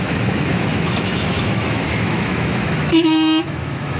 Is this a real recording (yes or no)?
no